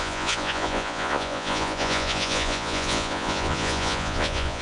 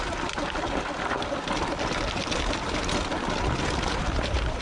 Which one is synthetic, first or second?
first